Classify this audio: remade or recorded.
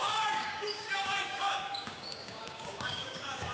remade